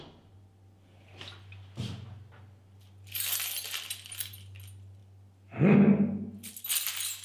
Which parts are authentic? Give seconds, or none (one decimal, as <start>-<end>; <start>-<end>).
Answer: 0.0-7.2

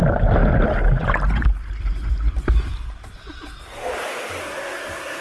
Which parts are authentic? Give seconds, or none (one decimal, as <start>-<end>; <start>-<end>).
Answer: 0.0-4.4

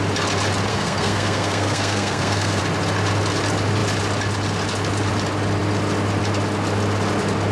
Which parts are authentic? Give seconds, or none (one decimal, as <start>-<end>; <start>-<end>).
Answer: 0.0-0.7; 2.6-7.5

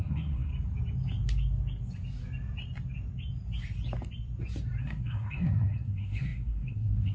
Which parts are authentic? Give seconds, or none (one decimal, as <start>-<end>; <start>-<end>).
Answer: 0.5-4.8

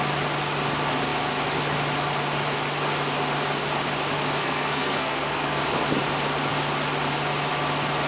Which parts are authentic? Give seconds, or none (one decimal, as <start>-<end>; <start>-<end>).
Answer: 0.0-4.4; 5.6-8.1